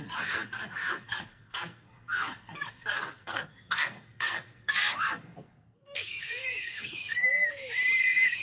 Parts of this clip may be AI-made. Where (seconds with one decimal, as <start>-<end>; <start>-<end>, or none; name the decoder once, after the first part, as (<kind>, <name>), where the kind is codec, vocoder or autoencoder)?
0.0-7.5 (codec, SNAC); 8.0-8.4